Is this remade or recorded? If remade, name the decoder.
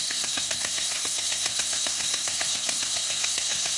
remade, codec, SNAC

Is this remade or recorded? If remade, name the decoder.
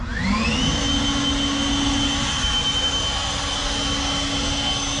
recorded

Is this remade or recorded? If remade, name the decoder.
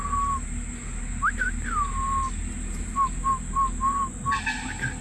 recorded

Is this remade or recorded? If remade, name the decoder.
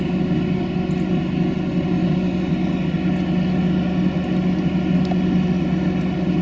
recorded